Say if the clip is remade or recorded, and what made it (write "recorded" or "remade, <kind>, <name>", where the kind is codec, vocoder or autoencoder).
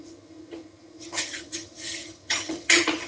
remade, vocoder, HiFi-GAN